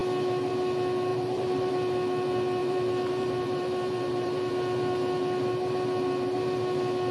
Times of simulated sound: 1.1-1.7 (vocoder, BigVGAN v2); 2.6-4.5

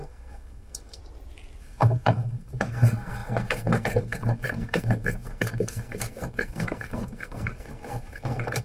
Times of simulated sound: 0.0-1.0 (codec, SNAC); 1.6-8.6

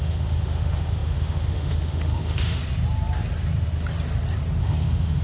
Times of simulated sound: 0.0-2.6 (autoencoder, DAC-VAE); 4.6-5.2